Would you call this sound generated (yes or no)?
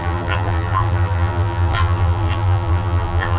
yes